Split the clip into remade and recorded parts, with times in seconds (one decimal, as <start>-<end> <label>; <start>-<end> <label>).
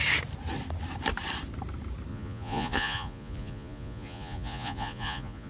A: 0.0-2.1 recorded; 2.1-5.5 remade